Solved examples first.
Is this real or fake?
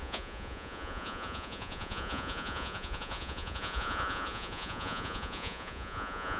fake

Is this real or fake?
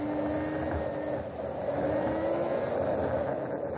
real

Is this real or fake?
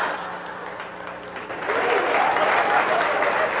real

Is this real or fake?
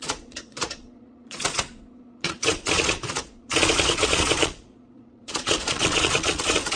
fake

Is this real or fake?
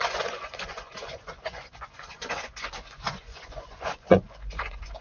fake